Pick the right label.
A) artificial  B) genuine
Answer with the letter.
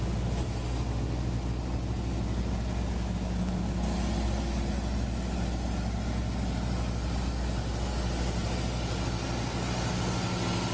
B